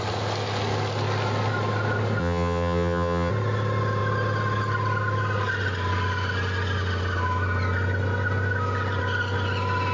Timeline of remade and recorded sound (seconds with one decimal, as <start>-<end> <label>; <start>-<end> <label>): 0.0-2.2 recorded; 2.2-3.3 remade; 3.3-9.9 recorded